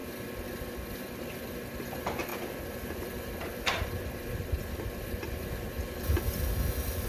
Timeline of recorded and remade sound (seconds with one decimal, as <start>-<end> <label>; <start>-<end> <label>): 0.0-7.1 recorded

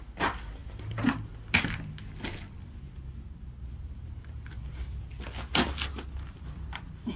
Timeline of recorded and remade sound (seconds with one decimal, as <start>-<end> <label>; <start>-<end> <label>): 0.0-0.6 recorded; 0.6-1.3 remade; 1.3-7.2 recorded

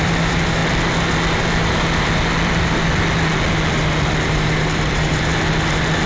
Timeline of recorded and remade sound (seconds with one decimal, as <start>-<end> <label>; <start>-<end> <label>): 0.0-0.6 remade; 0.6-4.3 recorded; 4.3-5.3 remade; 5.3-6.1 recorded

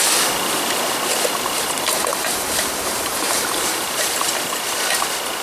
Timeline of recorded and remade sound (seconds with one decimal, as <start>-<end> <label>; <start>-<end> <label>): 0.0-2.1 recorded; 2.1-4.3 remade; 4.3-5.4 recorded

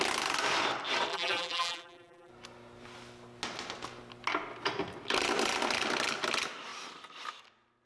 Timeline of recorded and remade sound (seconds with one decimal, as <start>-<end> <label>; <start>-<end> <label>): 0.0-1.1 recorded; 1.1-2.3 remade; 2.3-7.9 recorded

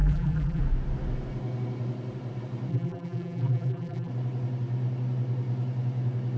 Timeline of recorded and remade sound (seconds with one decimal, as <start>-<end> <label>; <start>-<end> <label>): 0.0-0.6 remade; 0.6-2.7 recorded; 2.7-4.1 remade; 4.1-6.4 recorded